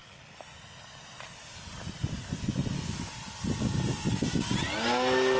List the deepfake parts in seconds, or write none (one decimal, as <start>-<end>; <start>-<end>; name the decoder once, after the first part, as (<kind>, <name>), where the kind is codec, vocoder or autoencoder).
none